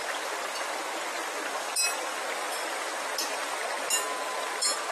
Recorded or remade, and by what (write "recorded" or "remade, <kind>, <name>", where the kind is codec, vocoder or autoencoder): recorded